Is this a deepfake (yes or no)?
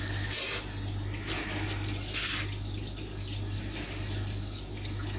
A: no